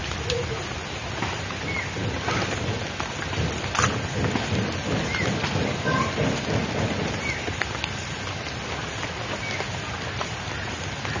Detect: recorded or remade recorded